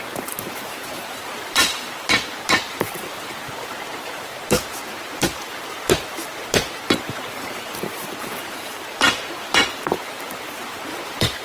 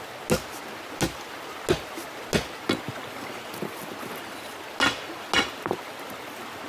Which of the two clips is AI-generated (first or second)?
first